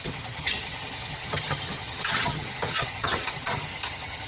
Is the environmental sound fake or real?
fake